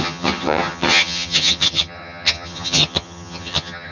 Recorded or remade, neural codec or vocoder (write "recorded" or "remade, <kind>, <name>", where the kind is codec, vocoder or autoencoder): remade, vocoder, HiFi-GAN